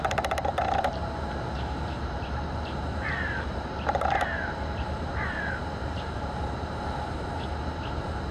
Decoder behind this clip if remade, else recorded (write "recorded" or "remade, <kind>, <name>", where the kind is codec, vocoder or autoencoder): remade, vocoder, BigVGAN v2